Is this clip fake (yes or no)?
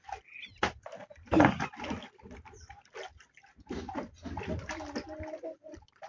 no